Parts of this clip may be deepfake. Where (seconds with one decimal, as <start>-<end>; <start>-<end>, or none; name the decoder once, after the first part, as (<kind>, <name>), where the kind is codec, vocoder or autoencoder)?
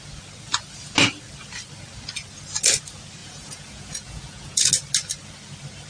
3.2-4.7 (vocoder, Vocos)